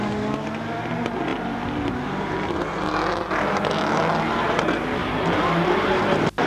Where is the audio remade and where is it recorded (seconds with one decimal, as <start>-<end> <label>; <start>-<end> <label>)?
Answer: 0.0-5.0 recorded; 5.0-6.0 remade; 6.0-6.5 recorded